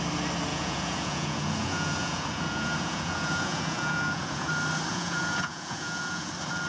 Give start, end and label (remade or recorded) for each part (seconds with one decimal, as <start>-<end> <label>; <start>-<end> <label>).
0.0-0.5 recorded; 0.5-4.5 remade; 4.5-4.9 recorded; 4.9-6.3 remade; 6.3-6.7 recorded